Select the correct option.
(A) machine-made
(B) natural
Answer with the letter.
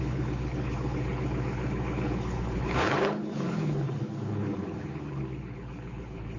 A